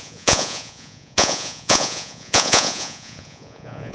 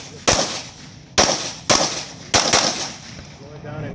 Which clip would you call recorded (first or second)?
second